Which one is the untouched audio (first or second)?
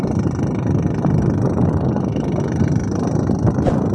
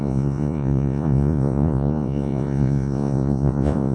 first